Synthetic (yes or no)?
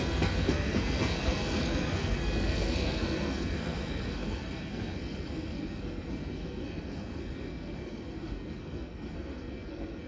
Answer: yes